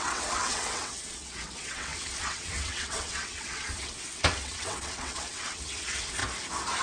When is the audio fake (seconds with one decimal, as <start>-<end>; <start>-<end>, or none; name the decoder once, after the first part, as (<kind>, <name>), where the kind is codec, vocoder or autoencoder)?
0.0-6.2 (vocoder, WaveNeXt)